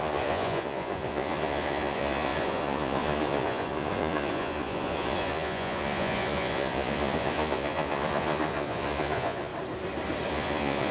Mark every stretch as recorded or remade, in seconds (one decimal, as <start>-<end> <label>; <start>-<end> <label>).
0.0-9.5 remade; 9.5-10.3 recorded; 10.3-10.9 remade